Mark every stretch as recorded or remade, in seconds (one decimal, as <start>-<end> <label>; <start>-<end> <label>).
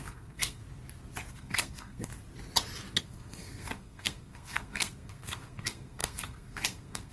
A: 0.0-0.6 remade; 0.6-1.3 recorded; 1.3-2.1 remade; 2.1-3.0 recorded; 3.0-7.1 remade